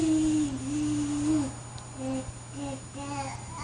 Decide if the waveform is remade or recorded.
recorded